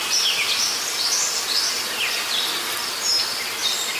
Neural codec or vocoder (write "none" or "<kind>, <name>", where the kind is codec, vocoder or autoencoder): none